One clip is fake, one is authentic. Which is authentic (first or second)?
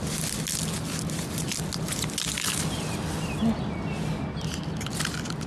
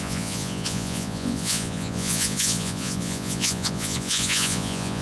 first